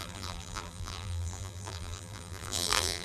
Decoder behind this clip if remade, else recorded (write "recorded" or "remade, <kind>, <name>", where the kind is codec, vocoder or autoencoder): remade, vocoder, BigVGAN v2